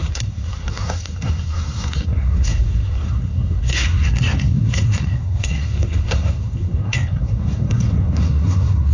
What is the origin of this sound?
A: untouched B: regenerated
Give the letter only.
B